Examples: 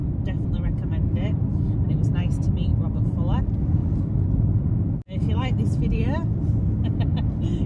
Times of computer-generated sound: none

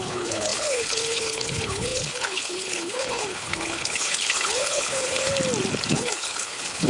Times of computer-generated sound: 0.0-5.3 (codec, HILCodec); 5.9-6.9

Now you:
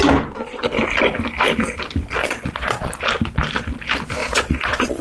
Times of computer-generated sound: 2.2-2.9 (vocoder, Vocos); 4.2-5.0

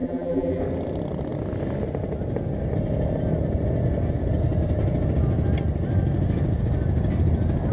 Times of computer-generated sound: 0.0-0.6 (vocoder, BigVGAN v2)